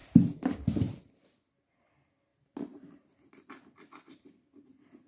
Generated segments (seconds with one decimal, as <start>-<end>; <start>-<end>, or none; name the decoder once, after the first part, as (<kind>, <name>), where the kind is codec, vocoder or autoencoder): none